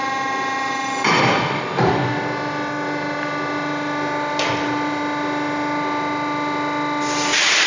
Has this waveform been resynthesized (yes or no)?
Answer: no